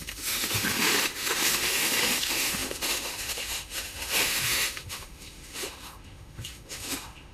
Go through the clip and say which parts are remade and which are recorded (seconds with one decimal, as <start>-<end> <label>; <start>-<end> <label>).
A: 0.0-7.3 remade